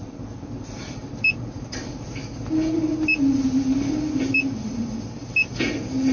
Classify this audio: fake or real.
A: real